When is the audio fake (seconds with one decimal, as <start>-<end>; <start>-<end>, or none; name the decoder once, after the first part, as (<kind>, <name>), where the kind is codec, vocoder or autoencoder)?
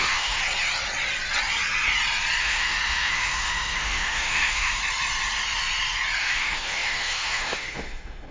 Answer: 0.0-0.4 (autoencoder, DAC-VAE); 2.4-4.8; 6.2-8.3